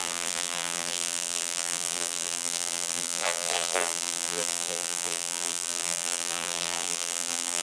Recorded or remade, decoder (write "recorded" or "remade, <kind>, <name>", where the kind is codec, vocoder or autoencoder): remade, vocoder, BigVGAN v2